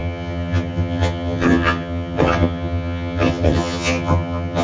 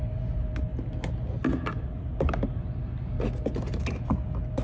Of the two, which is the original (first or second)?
second